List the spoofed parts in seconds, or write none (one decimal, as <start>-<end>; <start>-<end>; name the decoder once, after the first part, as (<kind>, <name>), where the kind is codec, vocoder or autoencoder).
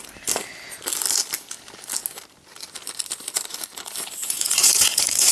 4.2-5.3 (vocoder, Vocos)